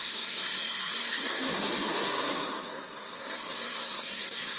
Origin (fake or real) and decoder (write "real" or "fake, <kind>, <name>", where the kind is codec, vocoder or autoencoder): fake, codec, SNAC